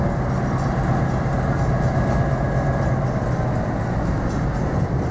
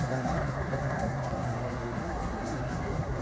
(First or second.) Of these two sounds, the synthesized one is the second